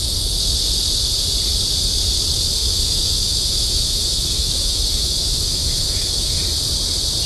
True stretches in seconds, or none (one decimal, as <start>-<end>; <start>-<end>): 0.0-2.6; 6.4-7.3